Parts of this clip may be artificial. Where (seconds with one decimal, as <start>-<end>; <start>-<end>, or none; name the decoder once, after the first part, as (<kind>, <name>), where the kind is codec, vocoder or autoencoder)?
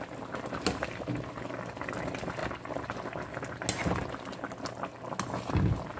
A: none